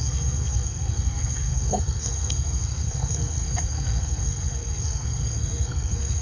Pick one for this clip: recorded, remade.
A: remade